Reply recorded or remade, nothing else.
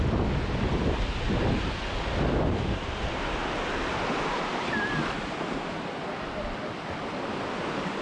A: recorded